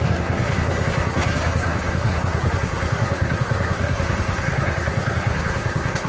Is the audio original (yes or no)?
no